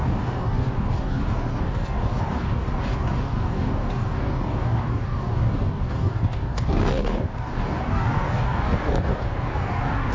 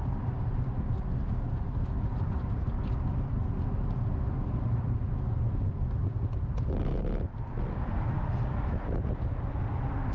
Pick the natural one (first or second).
second